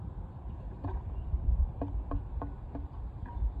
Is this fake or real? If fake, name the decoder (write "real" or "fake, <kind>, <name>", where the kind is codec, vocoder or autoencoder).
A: real